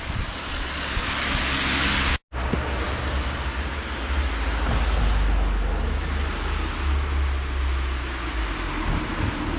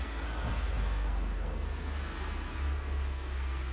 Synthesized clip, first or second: second